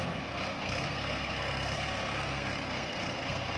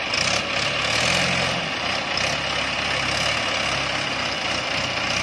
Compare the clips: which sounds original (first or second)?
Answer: second